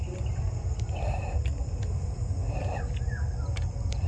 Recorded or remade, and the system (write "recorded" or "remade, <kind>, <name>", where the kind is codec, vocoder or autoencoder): recorded